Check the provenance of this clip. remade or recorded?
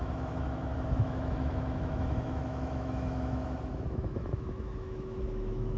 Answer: remade